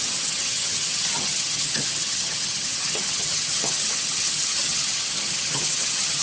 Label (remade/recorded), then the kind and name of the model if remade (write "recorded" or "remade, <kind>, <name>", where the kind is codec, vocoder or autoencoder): remade, vocoder, HiFi-GAN